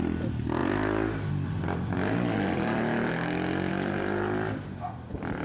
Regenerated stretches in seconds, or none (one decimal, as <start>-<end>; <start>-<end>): none